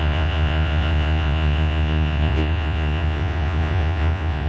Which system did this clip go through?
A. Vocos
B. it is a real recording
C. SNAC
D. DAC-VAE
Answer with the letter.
A